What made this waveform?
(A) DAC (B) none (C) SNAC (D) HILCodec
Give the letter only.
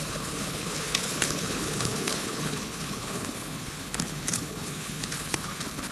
D